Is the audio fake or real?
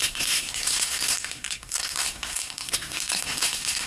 fake